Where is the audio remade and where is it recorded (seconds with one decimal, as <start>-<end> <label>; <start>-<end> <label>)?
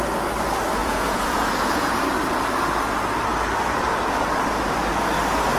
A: 0.0-0.8 recorded; 0.8-2.0 remade; 2.0-5.6 recorded